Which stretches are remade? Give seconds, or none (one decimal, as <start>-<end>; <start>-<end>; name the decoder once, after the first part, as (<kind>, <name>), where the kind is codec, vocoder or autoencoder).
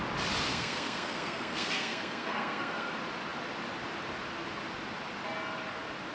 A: 0.5-2.9 (codec, SNAC)